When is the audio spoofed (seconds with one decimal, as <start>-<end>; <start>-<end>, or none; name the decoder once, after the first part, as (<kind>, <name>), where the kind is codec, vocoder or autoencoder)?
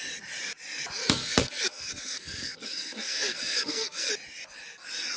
1.0-4.1 (codec, SNAC)